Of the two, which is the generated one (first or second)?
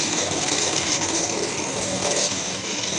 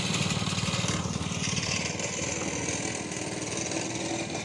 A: first